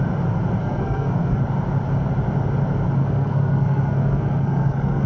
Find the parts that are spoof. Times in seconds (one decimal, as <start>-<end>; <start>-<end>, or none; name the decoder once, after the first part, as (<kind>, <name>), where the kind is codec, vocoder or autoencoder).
0.6-1.4 (codec, SNAC); 3.0-5.1